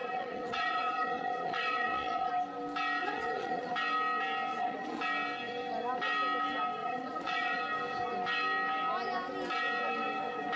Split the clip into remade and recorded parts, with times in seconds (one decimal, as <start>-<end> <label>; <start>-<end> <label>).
0.0-2.3 remade; 2.3-3.0 recorded; 3.0-3.7 remade; 3.7-4.5 recorded; 4.5-5.0 remade; 5.0-6.8 recorded; 6.8-7.6 remade; 7.6-10.6 recorded